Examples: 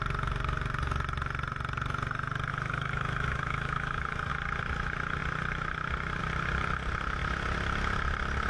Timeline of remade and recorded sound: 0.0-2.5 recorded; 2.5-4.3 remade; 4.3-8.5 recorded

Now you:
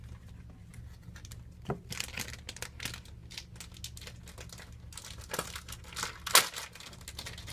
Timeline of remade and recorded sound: 0.0-7.5 recorded

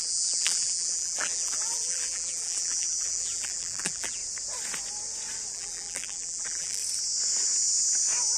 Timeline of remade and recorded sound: 0.0-4.2 remade; 4.2-5.5 recorded; 5.5-6.8 remade; 6.8-8.4 recorded

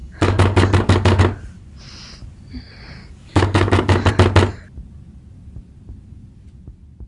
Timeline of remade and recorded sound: 0.0-1.2 remade; 1.2-3.0 recorded; 3.0-4.1 remade; 4.1-7.1 recorded

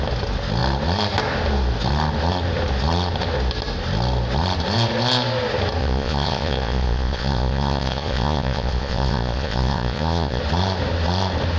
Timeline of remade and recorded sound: 0.0-5.8 recorded; 5.8-10.4 remade; 10.4-11.6 recorded

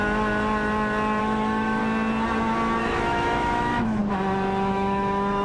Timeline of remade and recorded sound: 0.0-1.2 recorded; 1.2-1.8 remade; 1.8-2.8 recorded; 2.8-4.0 remade; 4.0-4.7 recorded; 4.7-5.4 remade